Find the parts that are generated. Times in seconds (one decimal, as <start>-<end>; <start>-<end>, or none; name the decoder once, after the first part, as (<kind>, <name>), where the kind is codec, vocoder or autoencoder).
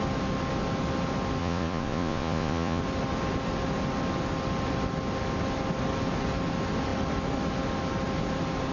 1.4-2.8 (vocoder, Vocos)